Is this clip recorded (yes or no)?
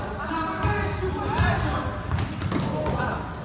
yes